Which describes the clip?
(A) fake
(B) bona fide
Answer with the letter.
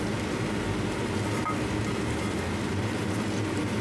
B